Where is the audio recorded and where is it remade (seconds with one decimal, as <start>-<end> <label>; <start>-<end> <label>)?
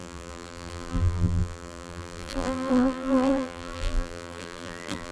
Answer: 0.0-5.1 remade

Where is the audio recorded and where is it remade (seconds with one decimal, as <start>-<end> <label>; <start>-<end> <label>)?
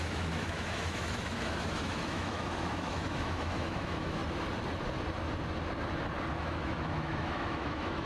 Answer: 0.0-4.2 remade; 4.2-6.3 recorded; 6.3-8.1 remade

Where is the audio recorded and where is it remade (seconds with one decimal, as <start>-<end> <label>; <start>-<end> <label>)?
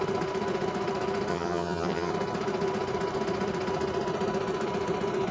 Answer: 0.0-1.3 recorded; 1.3-2.1 remade; 2.1-5.3 recorded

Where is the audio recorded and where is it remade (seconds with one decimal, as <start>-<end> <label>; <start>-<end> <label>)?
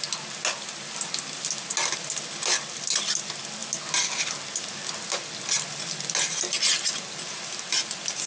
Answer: 0.0-8.3 recorded